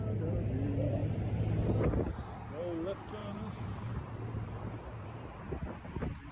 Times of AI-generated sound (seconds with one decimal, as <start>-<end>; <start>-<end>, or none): 1.0-1.5; 3.2-5.4